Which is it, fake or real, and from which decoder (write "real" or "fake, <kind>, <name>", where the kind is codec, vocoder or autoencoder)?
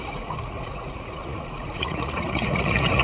fake, vocoder, Vocos